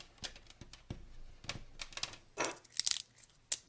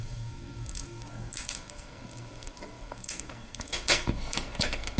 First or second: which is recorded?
first